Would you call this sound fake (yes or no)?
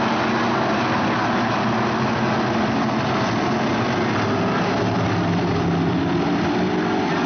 no